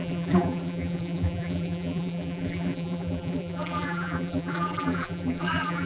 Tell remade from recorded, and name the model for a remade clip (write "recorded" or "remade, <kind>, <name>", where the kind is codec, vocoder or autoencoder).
remade, vocoder, BigVGAN v2